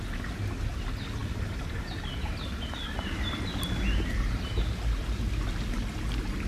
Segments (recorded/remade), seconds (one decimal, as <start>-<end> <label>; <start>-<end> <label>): 0.0-6.5 recorded